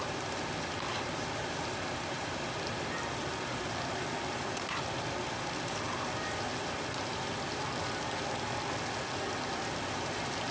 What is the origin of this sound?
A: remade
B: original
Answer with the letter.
B